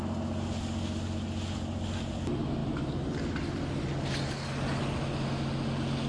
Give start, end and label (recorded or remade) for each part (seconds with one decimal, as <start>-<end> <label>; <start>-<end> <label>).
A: 0.0-6.1 recorded